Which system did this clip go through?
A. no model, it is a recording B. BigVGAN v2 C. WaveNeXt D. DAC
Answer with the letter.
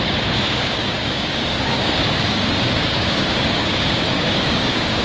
D